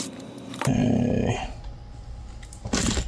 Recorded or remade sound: recorded